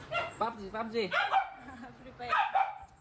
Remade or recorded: recorded